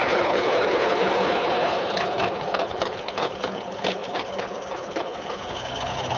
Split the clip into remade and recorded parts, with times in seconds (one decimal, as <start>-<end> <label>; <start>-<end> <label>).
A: 0.0-6.2 remade